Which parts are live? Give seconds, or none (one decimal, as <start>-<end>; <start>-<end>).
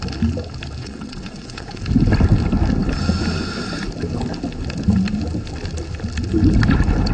0.0-0.8; 1.8-7.1